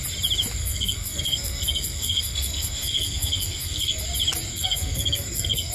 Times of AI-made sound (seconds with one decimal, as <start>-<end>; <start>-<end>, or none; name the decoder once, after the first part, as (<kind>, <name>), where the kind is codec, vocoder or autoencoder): 0.6-4.0 (codec, SNAC); 4.5-5.7